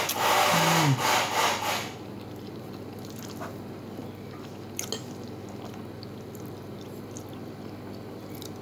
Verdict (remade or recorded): recorded